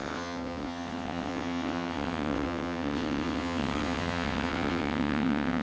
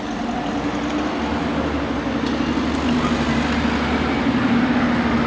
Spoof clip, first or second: first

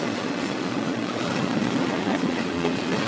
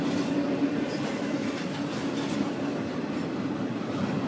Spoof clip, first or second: first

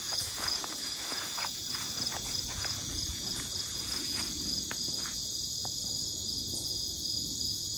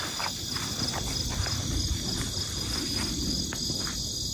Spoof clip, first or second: first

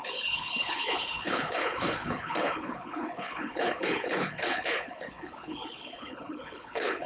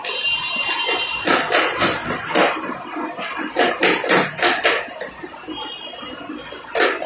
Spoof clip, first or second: first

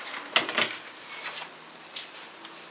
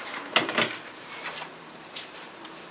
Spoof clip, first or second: second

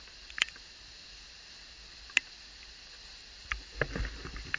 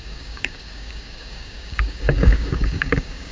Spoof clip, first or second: second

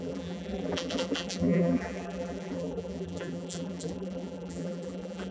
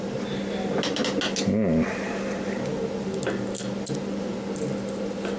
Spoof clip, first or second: first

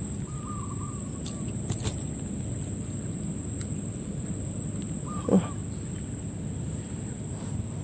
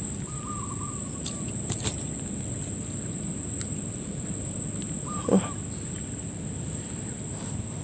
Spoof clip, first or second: second